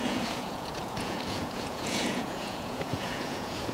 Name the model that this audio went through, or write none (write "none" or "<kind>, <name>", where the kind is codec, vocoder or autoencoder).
vocoder, Vocos